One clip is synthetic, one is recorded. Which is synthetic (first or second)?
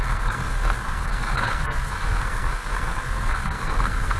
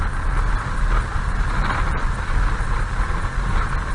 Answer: first